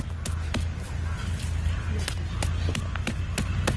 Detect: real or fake real